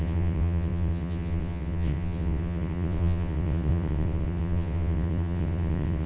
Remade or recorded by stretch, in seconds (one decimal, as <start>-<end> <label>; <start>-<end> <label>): 0.0-6.1 remade